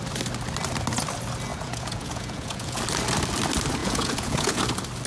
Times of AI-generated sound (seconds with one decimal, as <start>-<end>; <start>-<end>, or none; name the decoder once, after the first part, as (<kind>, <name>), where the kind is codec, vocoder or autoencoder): 1.5-2.8 (vocoder, Vocos); 3.8-4.6